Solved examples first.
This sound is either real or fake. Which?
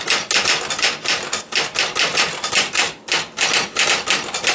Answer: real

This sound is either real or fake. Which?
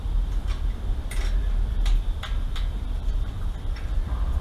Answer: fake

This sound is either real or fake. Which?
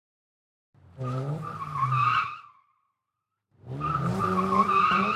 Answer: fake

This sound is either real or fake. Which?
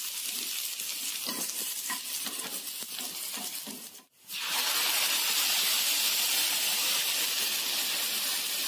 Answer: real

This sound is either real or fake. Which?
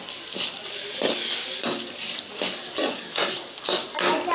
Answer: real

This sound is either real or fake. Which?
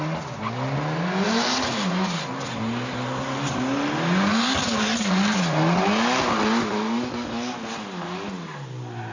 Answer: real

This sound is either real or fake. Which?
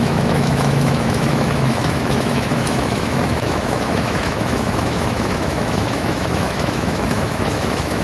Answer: fake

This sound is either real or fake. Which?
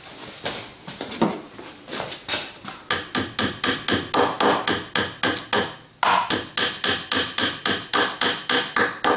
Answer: real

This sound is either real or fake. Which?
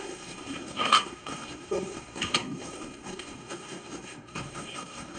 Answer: fake